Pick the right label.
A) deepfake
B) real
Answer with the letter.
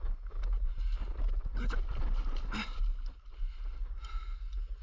B